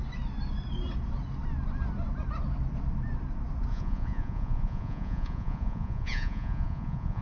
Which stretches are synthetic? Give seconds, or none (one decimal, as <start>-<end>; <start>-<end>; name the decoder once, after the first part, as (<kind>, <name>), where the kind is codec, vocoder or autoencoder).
3.7-7.2 (vocoder, Vocos)